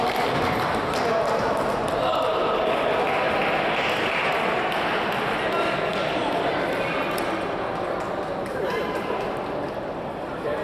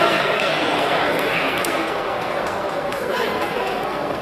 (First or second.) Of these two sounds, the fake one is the second